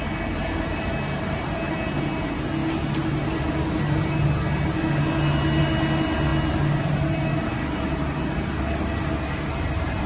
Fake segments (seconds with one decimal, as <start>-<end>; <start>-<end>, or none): 0.7-1.7